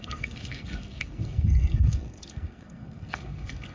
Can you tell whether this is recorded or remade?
remade